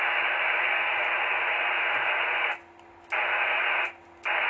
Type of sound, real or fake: real